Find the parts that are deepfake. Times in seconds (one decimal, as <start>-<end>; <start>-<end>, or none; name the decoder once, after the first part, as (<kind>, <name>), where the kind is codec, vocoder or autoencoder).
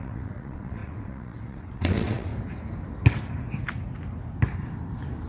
0.0-2.3 (vocoder, WaveNeXt)